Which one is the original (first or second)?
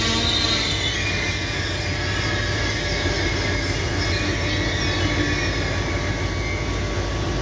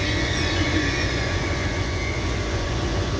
first